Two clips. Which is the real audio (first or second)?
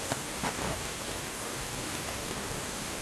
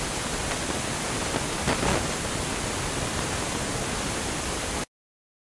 second